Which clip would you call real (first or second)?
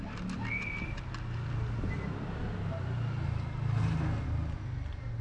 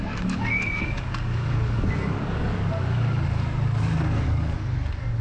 first